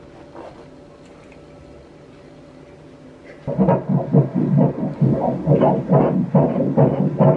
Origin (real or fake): real